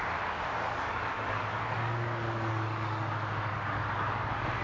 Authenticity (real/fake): fake